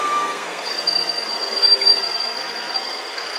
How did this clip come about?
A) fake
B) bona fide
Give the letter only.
A